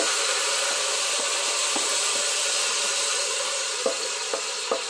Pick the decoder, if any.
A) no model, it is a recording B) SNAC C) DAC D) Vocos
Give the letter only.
A